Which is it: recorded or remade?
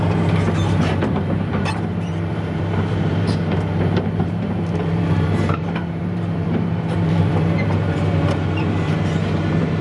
remade